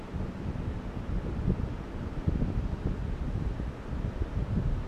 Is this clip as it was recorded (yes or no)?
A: yes